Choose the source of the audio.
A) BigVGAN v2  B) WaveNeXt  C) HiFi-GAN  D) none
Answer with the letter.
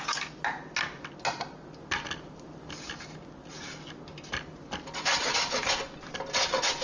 D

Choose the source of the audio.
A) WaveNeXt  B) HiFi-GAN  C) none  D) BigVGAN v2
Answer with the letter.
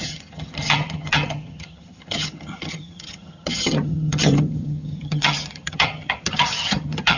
B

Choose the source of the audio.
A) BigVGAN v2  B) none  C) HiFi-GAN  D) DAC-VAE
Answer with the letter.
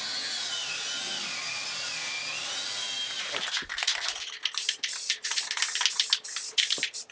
B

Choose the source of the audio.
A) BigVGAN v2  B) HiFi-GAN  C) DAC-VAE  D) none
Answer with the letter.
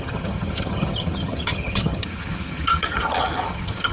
B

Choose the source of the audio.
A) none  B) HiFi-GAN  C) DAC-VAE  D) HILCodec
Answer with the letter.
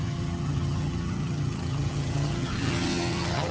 B